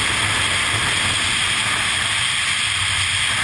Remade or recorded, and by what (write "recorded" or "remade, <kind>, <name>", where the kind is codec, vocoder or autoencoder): recorded